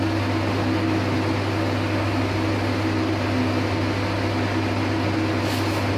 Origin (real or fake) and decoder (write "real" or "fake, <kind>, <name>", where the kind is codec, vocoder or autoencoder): real